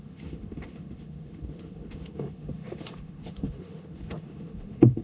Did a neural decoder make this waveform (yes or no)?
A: yes